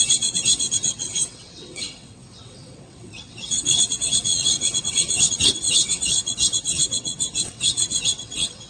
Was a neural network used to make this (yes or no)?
yes